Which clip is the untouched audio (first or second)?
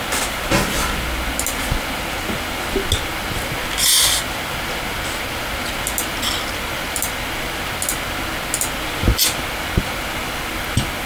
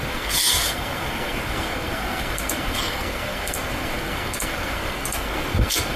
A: first